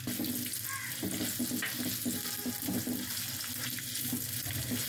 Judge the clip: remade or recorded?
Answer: recorded